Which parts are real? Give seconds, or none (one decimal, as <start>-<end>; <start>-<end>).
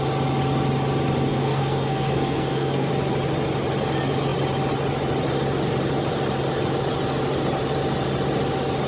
0.0-1.3; 2.9-8.9